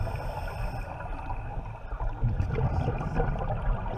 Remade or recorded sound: recorded